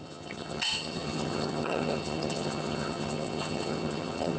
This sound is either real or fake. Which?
fake